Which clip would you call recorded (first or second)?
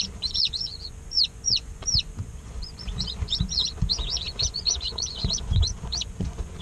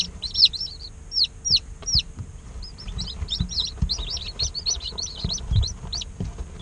second